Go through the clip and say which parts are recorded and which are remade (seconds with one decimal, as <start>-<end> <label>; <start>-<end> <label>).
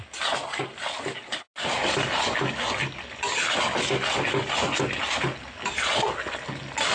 0.0-6.9 recorded